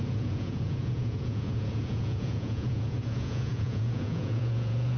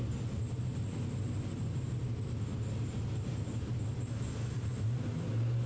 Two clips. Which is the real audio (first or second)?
second